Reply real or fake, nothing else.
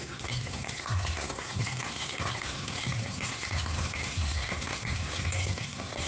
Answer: fake